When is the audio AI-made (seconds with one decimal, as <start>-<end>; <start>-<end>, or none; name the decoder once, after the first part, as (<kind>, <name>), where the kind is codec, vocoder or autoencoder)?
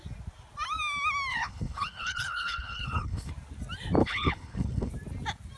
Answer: 1.3-3.3 (codec, HILCodec); 4.0-4.9